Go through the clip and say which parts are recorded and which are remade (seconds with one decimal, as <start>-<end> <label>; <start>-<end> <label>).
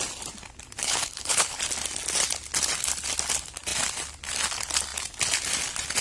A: 0.0-0.8 recorded; 0.8-1.6 remade; 1.6-6.0 recorded